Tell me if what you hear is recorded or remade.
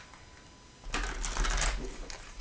recorded